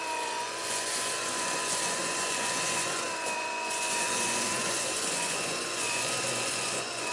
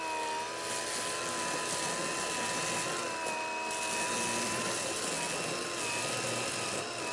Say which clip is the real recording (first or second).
second